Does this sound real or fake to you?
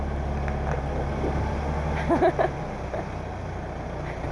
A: real